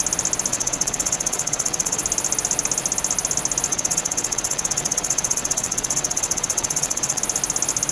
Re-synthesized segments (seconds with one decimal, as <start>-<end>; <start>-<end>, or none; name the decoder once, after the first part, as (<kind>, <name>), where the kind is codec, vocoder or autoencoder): 0.5-2.0 (vocoder, WaveNeXt); 3.7-7.2